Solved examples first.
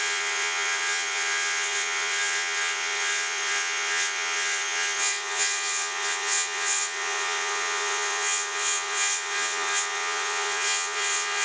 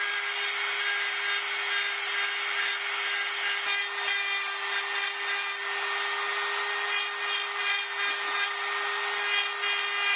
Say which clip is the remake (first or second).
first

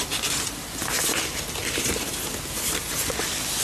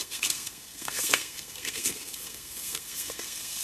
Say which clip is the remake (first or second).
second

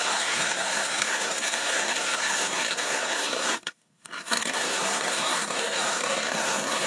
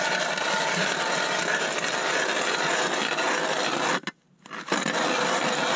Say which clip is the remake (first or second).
first